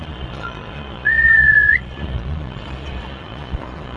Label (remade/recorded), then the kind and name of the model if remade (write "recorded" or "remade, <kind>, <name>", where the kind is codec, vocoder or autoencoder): remade, vocoder, Vocos